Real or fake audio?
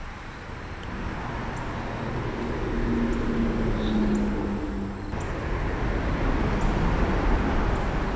real